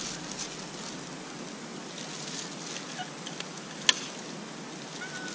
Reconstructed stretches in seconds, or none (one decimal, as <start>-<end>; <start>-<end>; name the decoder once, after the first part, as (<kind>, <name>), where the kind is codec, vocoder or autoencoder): none